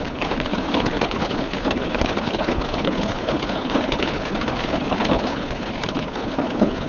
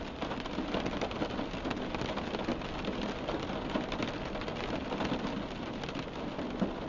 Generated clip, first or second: first